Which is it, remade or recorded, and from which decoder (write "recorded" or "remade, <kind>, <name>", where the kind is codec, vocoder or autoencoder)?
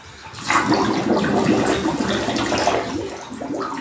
recorded